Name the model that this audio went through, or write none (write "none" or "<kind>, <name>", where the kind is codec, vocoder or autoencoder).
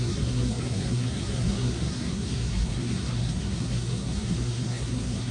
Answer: codec, SNAC